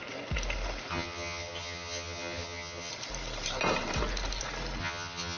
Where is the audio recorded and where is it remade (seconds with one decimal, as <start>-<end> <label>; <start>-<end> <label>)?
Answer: 0.0-0.9 recorded; 0.9-2.9 remade; 2.9-4.8 recorded; 4.8-5.4 remade